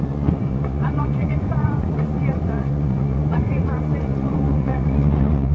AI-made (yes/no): yes